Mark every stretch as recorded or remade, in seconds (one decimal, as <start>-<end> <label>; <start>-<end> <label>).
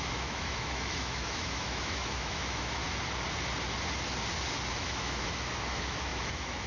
0.0-2.8 remade; 2.8-4.7 recorded; 4.7-6.7 remade